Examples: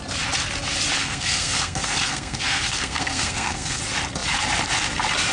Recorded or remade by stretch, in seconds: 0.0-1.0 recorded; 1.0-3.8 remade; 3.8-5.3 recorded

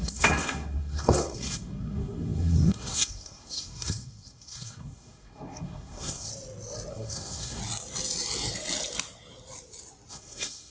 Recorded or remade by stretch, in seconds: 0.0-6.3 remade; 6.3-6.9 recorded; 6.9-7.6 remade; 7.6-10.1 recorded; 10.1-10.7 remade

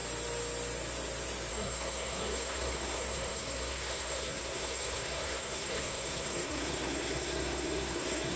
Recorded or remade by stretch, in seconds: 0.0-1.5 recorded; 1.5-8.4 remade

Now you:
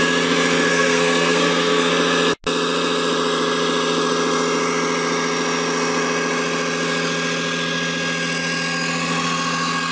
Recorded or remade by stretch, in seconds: 0.0-0.7 recorded; 0.7-1.9 remade; 1.9-9.9 recorded

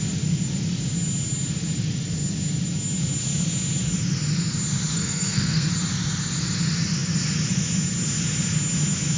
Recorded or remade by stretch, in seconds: 0.0-4.9 recorded; 4.9-5.7 remade; 5.7-9.2 recorded

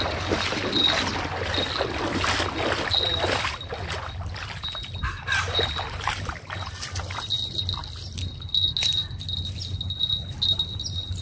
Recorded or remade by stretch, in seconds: 0.0-11.2 recorded

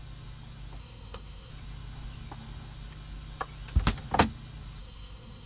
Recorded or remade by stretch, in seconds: 0.0-0.8 recorded; 0.8-1.5 remade; 1.5-4.8 recorded; 4.8-5.5 remade

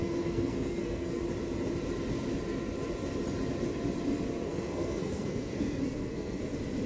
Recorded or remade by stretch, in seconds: 0.0-1.2 remade; 1.2-4.5 recorded; 4.5-6.4 remade; 6.4-6.9 recorded